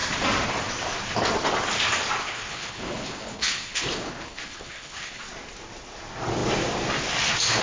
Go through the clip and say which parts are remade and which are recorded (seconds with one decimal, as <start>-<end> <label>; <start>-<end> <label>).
0.0-2.2 recorded; 2.2-5.2 remade; 5.2-7.6 recorded